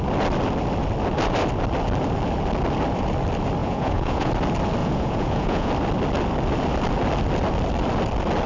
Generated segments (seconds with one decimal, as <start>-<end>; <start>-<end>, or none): 3.6-4.3; 4.8-5.7